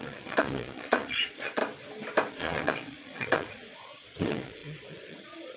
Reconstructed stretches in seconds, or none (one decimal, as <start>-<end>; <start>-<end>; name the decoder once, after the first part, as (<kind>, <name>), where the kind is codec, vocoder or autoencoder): 0.0-1.6 (vocoder, Vocos); 2.3-5.6